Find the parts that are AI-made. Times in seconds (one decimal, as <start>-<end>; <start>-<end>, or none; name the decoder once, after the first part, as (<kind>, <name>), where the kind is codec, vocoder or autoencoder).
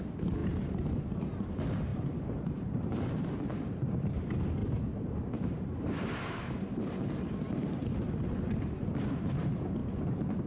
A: 0.0-10.5 (vocoder, BigVGAN v2)